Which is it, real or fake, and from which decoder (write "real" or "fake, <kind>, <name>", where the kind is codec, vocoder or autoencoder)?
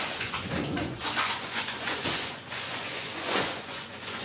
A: fake, vocoder, Vocos